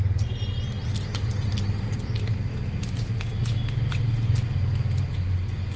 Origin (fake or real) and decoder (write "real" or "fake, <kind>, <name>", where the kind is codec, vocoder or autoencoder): real